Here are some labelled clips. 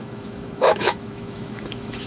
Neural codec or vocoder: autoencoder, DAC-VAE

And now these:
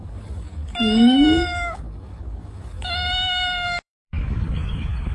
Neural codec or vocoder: codec, DAC